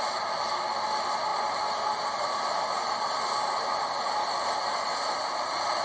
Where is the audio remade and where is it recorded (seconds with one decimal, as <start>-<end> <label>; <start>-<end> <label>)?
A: 0.0-5.8 recorded